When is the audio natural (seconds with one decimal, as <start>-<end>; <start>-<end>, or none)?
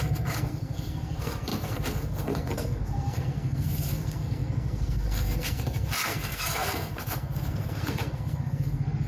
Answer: none